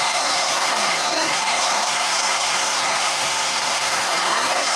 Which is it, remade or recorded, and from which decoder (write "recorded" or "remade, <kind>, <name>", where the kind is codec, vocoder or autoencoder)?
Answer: remade, codec, SNAC